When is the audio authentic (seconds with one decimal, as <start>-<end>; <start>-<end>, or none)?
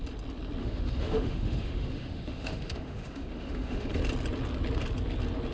0.0-0.6; 3.9-5.5